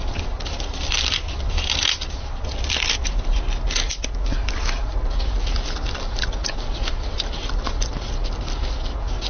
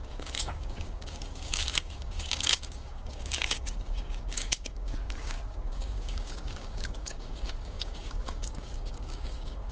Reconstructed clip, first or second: second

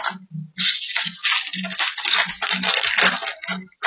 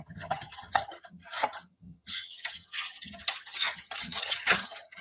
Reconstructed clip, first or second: second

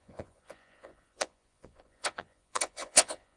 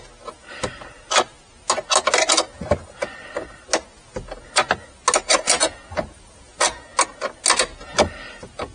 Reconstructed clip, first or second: first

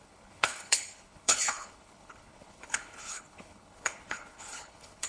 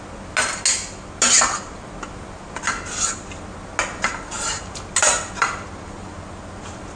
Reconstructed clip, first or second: first